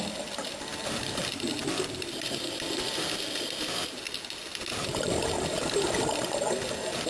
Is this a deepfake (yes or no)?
no